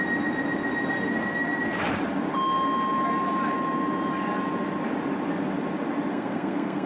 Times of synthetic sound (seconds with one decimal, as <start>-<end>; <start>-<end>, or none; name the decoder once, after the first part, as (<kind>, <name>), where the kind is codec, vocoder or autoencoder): 6.1-6.9 (codec, SNAC)